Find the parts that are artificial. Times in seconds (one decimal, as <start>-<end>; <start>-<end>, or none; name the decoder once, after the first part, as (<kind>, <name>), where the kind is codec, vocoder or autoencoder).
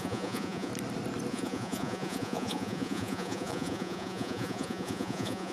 0.0-0.7 (vocoder, Vocos); 1.3-5.5